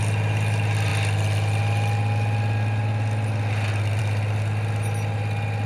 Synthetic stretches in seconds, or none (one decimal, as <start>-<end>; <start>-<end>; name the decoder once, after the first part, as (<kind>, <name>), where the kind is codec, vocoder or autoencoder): none